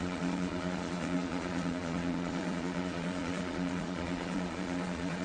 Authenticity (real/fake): fake